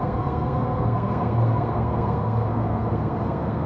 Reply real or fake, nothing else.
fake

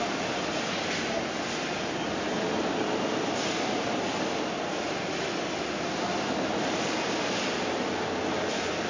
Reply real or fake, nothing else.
real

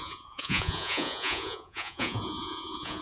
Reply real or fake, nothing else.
fake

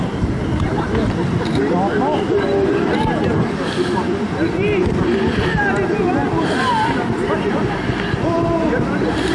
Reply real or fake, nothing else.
real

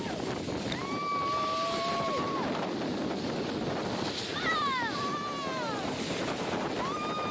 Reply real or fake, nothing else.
real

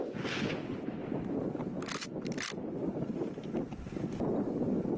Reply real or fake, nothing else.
real